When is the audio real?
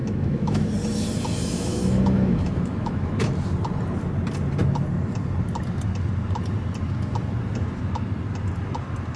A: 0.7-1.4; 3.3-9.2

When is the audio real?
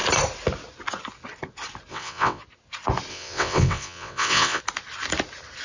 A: 0.0-1.9; 2.4-3.1; 4.6-5.6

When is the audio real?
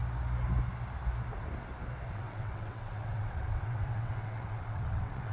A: 0.0-2.1